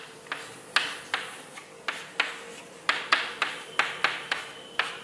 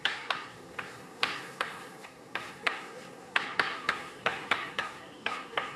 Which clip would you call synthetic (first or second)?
second